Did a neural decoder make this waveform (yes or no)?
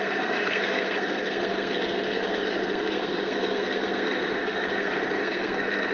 yes